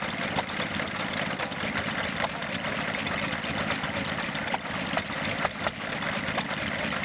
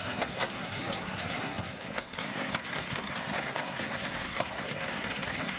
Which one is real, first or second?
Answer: first